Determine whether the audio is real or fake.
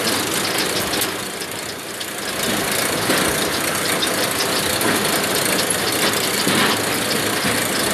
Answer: real